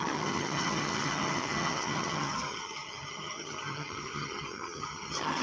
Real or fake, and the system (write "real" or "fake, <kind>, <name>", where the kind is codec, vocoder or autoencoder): fake, vocoder, HiFi-GAN